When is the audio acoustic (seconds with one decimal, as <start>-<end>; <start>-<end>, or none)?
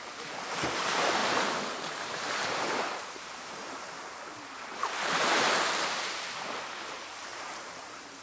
0.0-1.2; 4.1-4.8; 5.5-7.3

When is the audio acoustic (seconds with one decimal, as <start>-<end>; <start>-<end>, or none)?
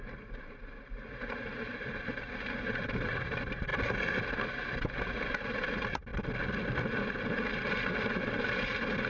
3.7-4.5; 6.1-8.1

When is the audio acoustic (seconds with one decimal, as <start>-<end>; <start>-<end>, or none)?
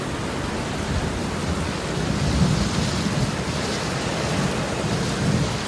0.0-5.7